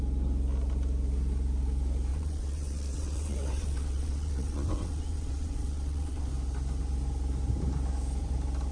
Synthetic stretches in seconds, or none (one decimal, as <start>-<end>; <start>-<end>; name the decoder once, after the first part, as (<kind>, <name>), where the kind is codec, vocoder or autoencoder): 2.1-6.3 (vocoder, WaveNeXt)